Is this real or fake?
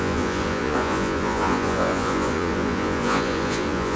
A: fake